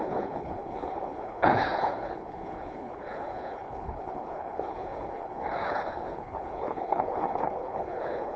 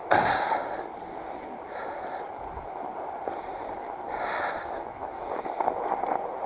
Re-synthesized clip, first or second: first